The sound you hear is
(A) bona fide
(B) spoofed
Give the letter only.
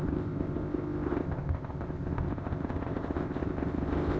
B